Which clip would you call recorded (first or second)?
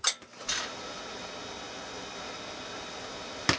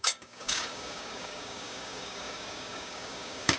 first